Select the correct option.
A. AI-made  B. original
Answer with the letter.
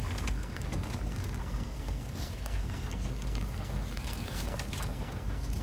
A